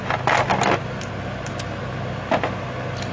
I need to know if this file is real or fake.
real